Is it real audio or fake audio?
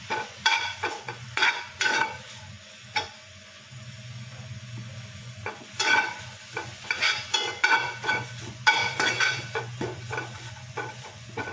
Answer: fake